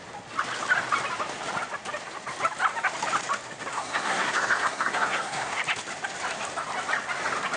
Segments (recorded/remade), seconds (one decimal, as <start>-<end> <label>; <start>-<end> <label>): 0.0-3.7 recorded; 3.7-5.6 remade; 5.6-7.6 recorded